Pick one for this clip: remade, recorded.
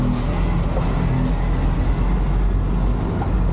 recorded